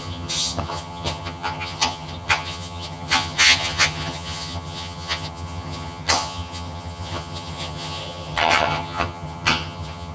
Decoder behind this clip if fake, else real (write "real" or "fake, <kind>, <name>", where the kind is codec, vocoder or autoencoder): fake, vocoder, HiFi-GAN